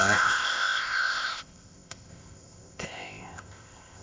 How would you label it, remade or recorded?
remade